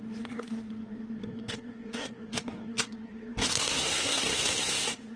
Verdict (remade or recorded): remade